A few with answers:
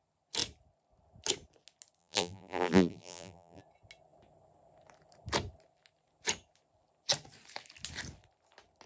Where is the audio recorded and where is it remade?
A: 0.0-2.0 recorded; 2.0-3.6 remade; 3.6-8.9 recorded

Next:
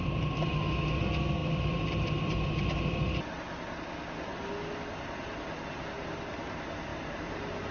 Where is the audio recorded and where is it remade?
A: 0.0-0.5 remade; 0.5-1.4 recorded; 1.4-3.0 remade; 3.0-6.9 recorded; 6.9-7.7 remade

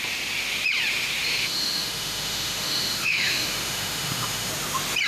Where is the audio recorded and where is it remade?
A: 0.0-1.4 recorded; 1.4-4.5 remade; 4.5-5.1 recorded

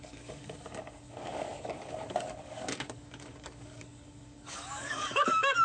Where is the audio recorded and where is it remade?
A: 0.0-5.6 remade

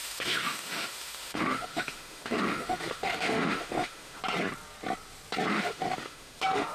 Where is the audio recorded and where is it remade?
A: 0.0-4.2 remade; 4.2-5.5 recorded; 5.5-6.7 remade

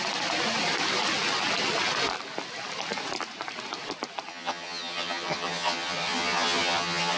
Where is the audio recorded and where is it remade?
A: 0.0-4.3 recorded; 4.3-7.2 remade

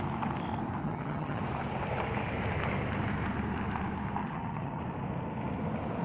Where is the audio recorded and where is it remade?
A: 0.0-0.8 recorded; 0.8-1.4 remade; 1.4-4.2 recorded; 4.2-4.8 remade; 4.8-6.0 recorded